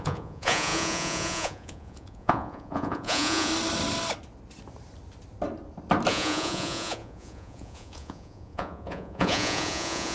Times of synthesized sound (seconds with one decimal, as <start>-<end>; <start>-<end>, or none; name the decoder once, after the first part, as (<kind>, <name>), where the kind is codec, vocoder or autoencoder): 0.0-3.5 (vocoder, Vocos); 6.1-10.1